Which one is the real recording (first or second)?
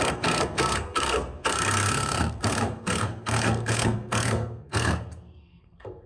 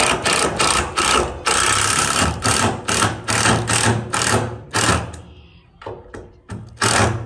second